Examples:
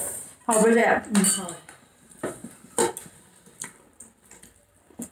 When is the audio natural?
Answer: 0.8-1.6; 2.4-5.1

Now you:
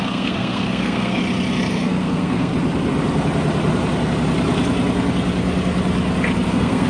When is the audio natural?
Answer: 1.2-1.7; 2.5-6.5

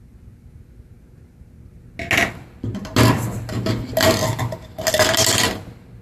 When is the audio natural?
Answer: 0.0-6.0

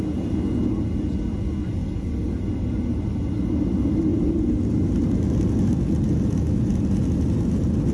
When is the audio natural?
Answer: 0.0-7.9

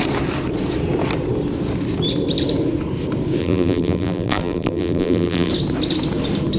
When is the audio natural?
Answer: 0.0-3.4; 5.5-6.6

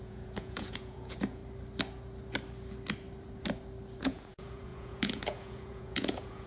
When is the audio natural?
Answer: 1.4-4.0

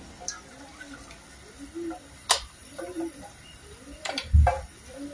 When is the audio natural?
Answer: 0.0-2.6; 3.3-5.1